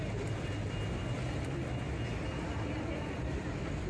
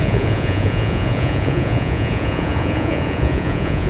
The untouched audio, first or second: first